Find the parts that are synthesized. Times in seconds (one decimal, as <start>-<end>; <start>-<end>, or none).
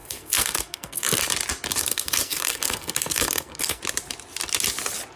0.0-1.2; 1.8-3.8